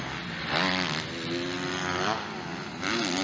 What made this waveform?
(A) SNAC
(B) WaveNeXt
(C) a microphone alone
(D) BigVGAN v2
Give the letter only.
C